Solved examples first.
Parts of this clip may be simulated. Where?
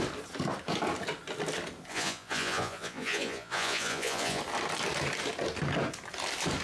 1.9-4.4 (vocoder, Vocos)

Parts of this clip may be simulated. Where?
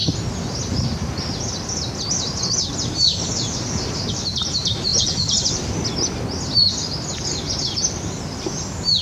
4.9-5.5 (vocoder, BigVGAN v2)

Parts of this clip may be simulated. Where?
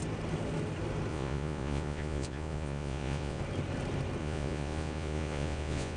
1.1-3.4 (vocoder, Vocos); 4.2-6.0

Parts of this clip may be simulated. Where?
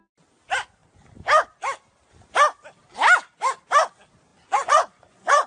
4.3-5.5 (vocoder, Vocos)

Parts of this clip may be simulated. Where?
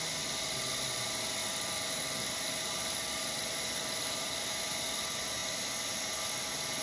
1.4-4.5 (vocoder, BigVGAN v2)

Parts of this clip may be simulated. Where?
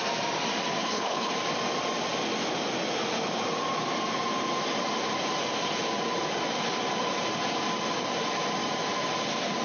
0.8-1.3 (codec, HILCodec)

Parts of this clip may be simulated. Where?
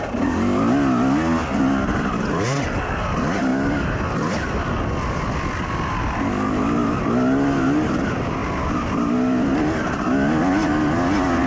none